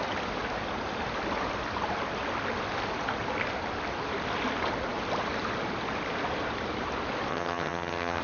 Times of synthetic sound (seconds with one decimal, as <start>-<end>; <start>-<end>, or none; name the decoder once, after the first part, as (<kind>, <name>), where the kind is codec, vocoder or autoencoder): 7.3-8.2 (vocoder, HiFi-GAN)